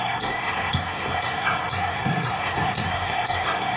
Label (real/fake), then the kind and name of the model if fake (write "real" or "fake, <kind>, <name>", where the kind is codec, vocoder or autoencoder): fake, codec, SNAC